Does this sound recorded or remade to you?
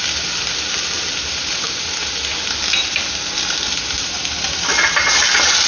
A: recorded